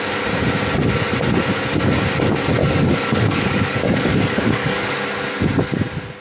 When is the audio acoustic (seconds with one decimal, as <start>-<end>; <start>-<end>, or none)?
0.0-2.6; 4.9-6.2

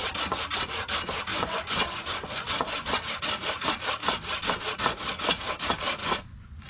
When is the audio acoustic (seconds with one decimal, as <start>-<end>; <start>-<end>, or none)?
0.0-1.3; 2.9-6.0

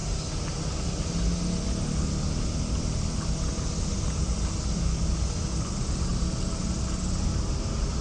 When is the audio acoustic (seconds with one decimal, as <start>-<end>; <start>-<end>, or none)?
0.0-8.0

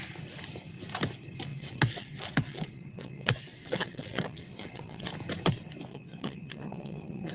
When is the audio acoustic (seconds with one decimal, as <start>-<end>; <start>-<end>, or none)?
0.0-1.5; 5.1-5.9

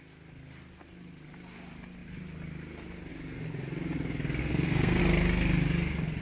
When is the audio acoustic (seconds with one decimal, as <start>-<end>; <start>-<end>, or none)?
0.0-4.4; 5.0-6.2